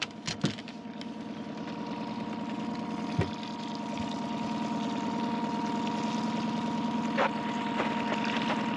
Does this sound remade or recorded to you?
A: recorded